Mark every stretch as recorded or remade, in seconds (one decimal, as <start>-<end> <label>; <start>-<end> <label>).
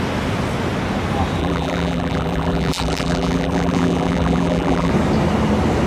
0.0-1.4 recorded; 1.4-4.9 remade; 4.9-5.9 recorded